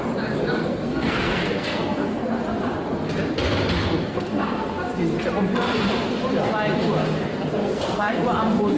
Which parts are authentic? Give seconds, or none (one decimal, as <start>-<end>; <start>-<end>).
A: 0.0-0.6; 2.3-4.0; 4.7-7.6; 8.2-8.8

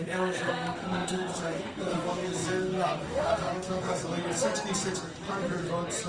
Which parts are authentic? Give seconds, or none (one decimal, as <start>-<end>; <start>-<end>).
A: 4.0-6.1

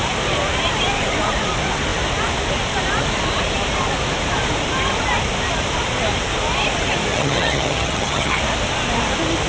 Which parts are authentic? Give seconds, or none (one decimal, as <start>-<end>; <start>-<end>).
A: 0.0-7.1; 8.4-9.5

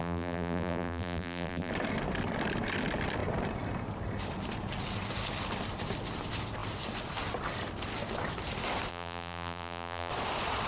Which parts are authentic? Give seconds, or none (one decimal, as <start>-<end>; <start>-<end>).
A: 1.7-8.9; 10.1-10.7